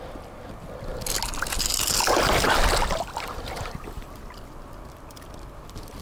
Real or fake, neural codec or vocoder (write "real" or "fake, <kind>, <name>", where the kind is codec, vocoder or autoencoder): real